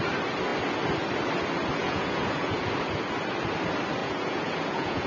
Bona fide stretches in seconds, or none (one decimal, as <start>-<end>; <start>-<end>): 0.0-1.8; 2.6-4.0